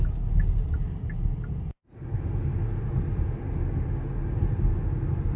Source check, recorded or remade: recorded